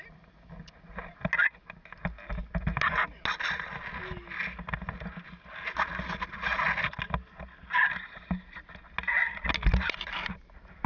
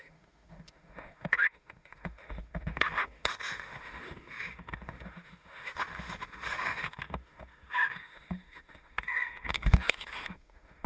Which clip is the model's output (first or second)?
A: second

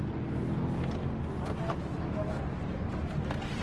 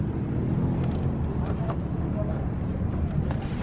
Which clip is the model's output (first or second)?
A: second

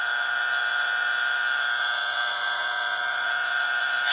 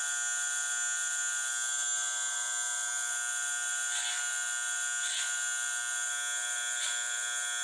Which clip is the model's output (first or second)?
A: first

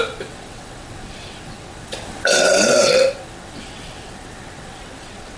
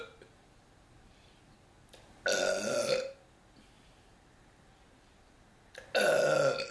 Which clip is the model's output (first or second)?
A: first